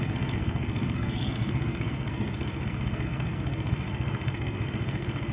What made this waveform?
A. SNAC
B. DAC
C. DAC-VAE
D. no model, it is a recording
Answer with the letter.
A